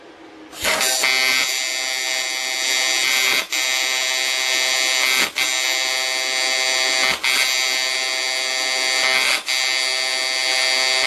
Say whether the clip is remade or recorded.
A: recorded